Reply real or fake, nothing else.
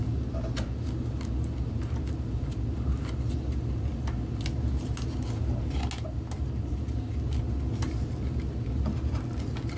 real